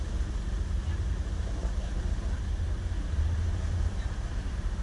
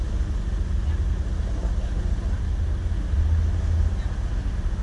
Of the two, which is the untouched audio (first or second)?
second